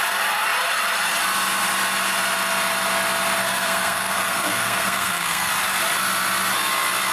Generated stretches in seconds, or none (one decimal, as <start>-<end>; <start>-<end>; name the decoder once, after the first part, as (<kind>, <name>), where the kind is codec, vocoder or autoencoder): 3.4-5.5 (codec, SNAC)